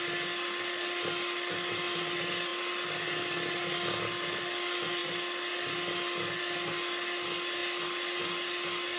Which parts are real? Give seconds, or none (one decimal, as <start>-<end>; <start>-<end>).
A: 0.0-9.0